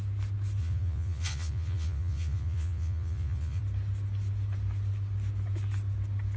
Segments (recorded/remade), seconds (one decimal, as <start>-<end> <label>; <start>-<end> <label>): 0.0-0.6 recorded; 0.6-3.6 remade; 3.6-6.4 recorded